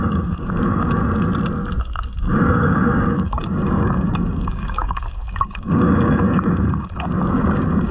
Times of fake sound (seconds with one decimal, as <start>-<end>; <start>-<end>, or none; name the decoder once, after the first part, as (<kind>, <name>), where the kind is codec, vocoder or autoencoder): 0.0-1.0 (codec, DAC); 1.8-7.9